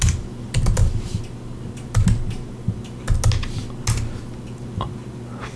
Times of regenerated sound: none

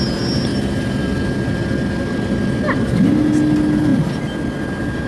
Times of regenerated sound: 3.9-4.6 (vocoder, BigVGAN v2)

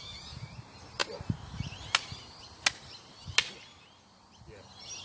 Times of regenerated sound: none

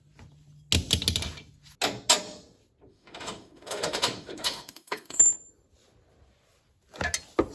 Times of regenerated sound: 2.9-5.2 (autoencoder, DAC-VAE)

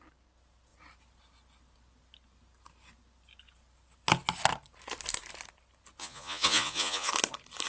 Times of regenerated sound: 6.0-7.1 (vocoder, Vocos)